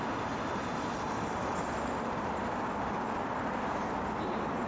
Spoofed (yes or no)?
no